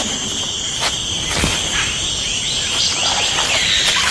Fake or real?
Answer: real